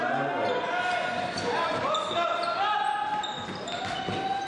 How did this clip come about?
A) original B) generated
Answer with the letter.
A